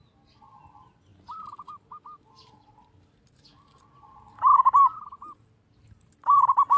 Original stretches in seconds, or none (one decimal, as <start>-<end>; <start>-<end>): 0.0-6.8